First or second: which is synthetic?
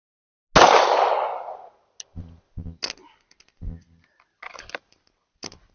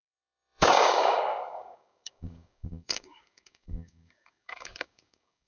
second